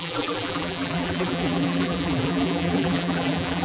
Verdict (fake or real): fake